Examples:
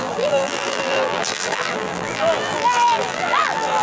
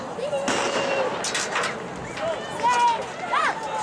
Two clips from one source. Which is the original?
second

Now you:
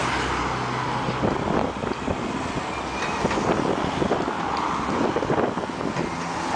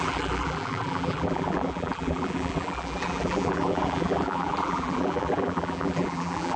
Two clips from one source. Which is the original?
first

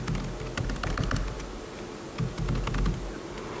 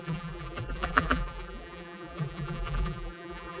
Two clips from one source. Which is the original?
first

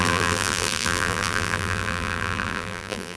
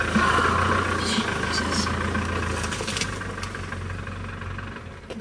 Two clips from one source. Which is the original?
second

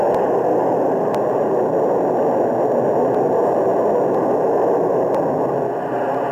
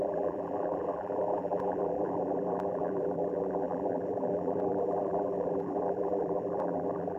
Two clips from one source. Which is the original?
first